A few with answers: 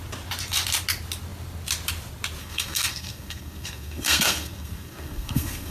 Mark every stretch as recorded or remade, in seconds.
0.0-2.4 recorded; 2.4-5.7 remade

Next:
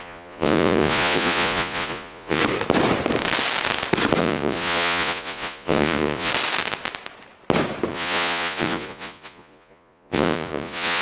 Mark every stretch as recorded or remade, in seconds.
0.0-2.4 remade; 2.4-4.2 recorded; 4.2-6.3 remade; 6.3-7.9 recorded; 7.9-11.0 remade

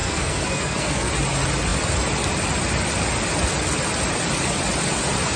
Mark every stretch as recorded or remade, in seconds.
0.0-1.1 remade; 1.1-5.4 recorded

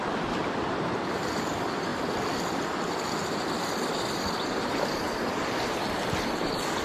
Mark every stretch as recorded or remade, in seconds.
0.0-6.8 recorded